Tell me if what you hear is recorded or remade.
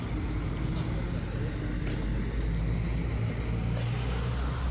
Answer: recorded